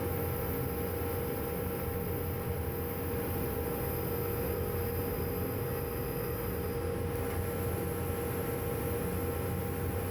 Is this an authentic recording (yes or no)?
yes